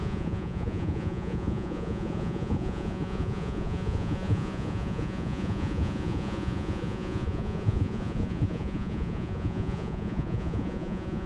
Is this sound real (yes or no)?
no